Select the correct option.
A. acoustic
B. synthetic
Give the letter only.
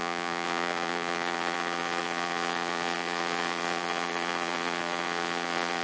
B